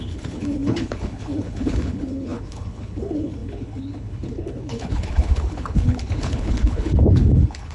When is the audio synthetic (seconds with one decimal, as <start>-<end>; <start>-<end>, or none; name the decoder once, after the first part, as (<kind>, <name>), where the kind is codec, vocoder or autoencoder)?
0.0-7.7 (codec, HILCodec)